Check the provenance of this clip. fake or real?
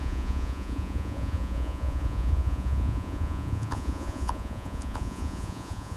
fake